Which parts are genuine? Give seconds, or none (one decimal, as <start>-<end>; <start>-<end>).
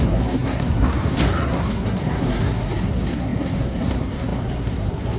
none